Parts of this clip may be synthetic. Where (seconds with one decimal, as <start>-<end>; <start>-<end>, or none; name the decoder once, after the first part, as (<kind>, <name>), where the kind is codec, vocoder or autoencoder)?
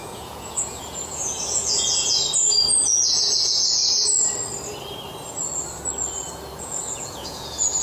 0.0-3.8 (vocoder, Vocos); 6.6-7.8